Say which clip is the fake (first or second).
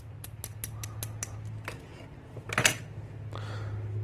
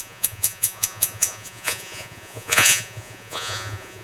second